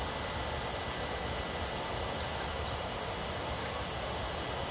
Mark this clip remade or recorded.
recorded